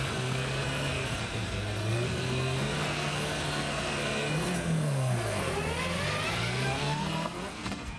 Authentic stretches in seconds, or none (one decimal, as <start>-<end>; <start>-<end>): 5.5-6.3